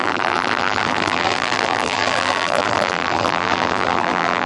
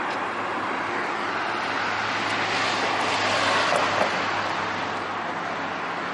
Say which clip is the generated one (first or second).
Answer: first